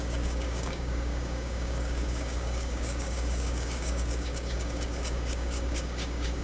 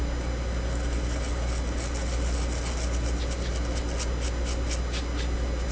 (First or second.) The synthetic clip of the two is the first